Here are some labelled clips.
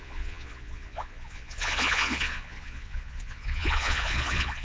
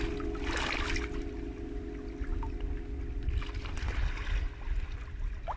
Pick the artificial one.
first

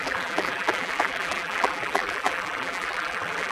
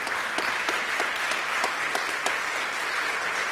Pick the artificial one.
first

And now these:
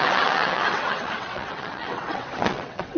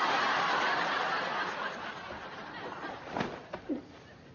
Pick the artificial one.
first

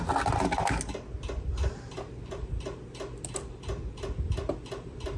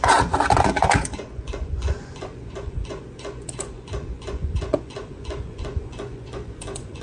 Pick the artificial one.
second